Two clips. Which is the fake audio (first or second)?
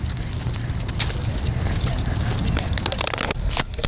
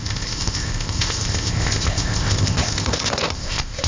second